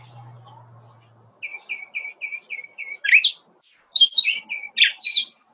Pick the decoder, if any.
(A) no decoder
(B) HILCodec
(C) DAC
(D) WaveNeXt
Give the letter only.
A